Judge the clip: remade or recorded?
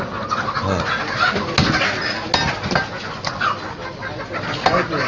recorded